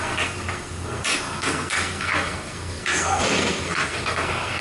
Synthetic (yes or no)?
yes